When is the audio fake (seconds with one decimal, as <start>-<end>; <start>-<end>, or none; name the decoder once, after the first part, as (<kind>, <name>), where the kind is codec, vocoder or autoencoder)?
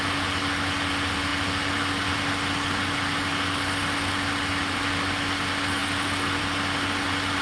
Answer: none